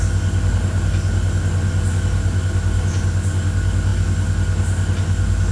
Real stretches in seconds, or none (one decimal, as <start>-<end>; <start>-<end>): 0.0-5.5